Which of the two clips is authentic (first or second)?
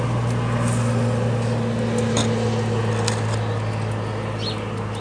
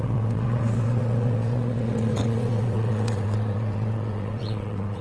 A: first